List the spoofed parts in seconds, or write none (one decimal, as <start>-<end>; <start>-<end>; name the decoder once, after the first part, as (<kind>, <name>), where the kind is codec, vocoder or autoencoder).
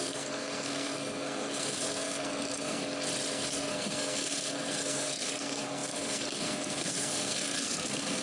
0.0-2.8 (codec, SNAC); 3.3-8.2